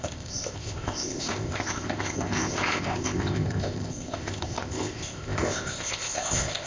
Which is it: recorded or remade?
remade